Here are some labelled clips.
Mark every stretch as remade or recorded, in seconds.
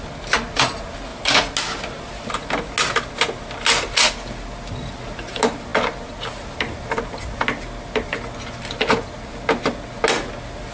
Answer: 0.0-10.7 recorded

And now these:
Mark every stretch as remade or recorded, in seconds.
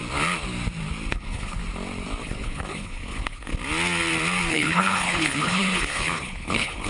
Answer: 0.0-1.1 recorded; 1.1-1.6 remade; 1.6-2.2 recorded; 2.2-3.5 remade; 3.5-4.5 recorded; 4.5-6.9 remade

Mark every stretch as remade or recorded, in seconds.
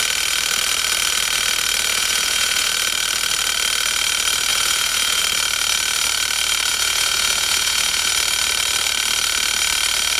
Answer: 0.0-1.9 recorded; 1.9-2.7 remade; 2.7-4.5 recorded; 4.5-5.2 remade; 5.2-6.7 recorded; 6.7-8.1 remade; 8.1-10.2 recorded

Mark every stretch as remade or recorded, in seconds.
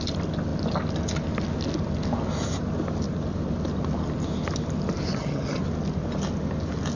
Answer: 0.0-5.1 recorded; 5.1-5.6 remade; 5.6-7.0 recorded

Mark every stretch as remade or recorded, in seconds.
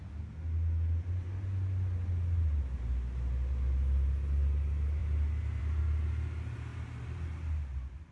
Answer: 0.0-8.1 recorded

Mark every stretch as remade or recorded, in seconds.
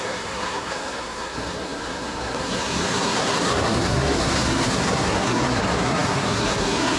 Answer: 0.0-7.0 remade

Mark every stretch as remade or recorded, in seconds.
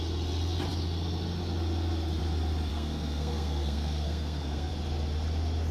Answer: 0.0-2.7 recorded; 2.7-4.7 remade; 4.7-5.7 recorded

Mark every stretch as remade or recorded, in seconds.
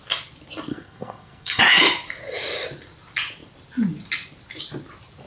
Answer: 0.0-0.7 recorded; 0.7-1.6 remade; 1.6-5.3 recorded